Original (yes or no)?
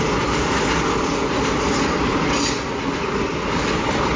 yes